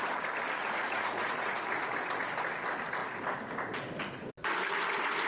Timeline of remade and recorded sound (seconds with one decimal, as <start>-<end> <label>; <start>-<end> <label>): 0.0-0.6 recorded; 0.6-1.6 remade; 1.6-5.3 recorded

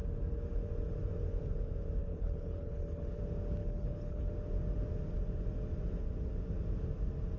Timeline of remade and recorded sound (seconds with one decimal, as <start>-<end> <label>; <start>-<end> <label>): 0.0-2.0 recorded; 2.0-3.2 remade; 3.2-3.6 recorded; 3.6-4.3 remade; 4.3-7.4 recorded

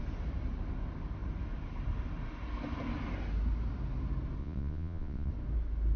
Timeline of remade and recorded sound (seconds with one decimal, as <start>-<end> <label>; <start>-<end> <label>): 0.0-4.4 recorded; 4.4-5.3 remade; 5.3-6.0 recorded

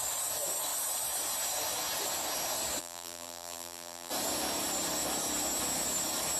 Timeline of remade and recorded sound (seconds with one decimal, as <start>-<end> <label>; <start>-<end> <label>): 0.0-2.8 recorded; 2.8-4.1 remade; 4.1-6.4 recorded

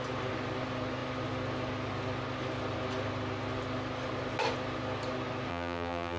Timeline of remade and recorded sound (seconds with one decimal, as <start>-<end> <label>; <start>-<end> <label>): 0.0-5.5 recorded; 5.5-6.2 remade

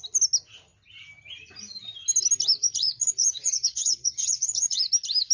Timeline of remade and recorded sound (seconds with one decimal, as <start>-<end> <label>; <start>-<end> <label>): 0.0-2.6 recorded; 2.6-4.8 remade; 4.8-5.3 recorded